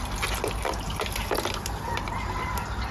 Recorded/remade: recorded